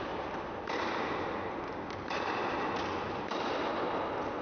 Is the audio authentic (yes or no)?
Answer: yes